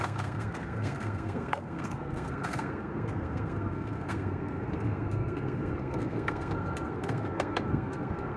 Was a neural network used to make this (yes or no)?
yes